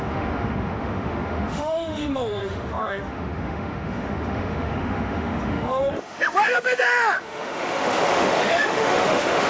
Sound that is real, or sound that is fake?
fake